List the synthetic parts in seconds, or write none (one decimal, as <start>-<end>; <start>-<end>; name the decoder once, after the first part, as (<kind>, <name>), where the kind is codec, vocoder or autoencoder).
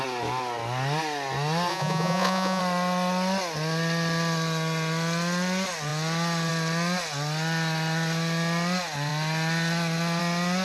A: 1.7-2.6 (vocoder, Vocos)